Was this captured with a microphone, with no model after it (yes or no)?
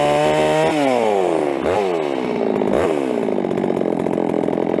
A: yes